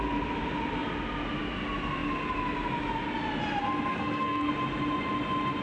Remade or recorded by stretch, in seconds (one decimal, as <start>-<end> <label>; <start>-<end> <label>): 0.0-3.9 recorded; 3.9-4.5 remade; 4.5-5.6 recorded